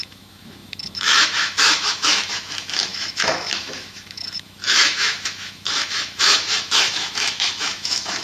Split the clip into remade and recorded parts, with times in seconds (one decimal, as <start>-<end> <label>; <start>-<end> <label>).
0.0-8.2 remade